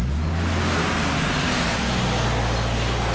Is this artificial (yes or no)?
no